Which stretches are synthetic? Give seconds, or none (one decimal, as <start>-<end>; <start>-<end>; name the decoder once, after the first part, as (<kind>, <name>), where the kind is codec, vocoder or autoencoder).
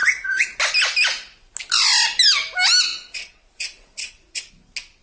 0.0-0.6 (vocoder, Vocos); 2.9-4.5